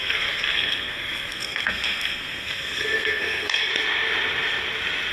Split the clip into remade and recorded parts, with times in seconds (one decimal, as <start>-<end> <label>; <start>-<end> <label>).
0.0-3.7 remade; 3.7-5.1 recorded